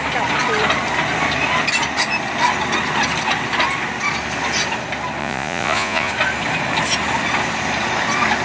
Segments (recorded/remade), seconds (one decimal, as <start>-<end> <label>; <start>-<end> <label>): 0.0-5.2 recorded; 5.2-6.1 remade; 6.1-8.4 recorded